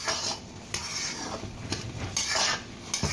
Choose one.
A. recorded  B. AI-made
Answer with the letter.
A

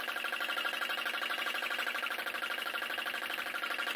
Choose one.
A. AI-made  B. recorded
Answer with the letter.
B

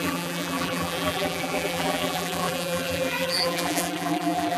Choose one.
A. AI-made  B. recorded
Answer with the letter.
A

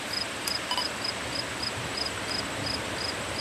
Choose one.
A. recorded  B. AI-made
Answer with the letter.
A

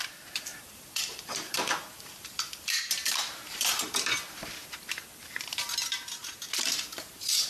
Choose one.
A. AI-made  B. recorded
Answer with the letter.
A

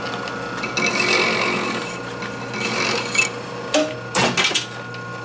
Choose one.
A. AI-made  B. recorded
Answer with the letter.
B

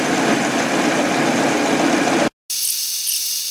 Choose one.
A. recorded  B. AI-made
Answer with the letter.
A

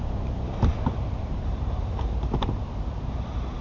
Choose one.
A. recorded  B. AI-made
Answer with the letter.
B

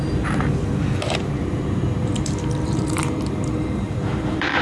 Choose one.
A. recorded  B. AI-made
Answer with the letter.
B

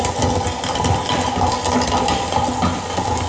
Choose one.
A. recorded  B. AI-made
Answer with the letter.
A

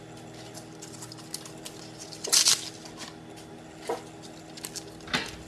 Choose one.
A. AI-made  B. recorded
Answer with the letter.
B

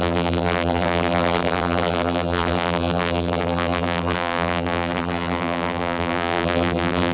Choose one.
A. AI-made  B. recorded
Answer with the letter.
A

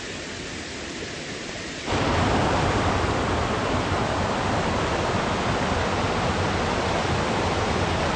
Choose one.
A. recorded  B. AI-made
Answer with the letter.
B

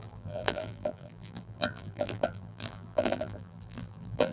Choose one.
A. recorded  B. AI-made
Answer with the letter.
B